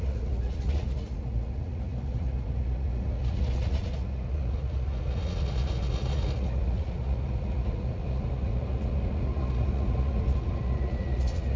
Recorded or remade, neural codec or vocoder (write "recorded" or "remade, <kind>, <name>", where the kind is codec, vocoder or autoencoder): remade, vocoder, Vocos